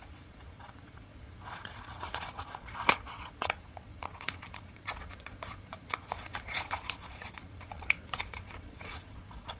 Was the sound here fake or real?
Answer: fake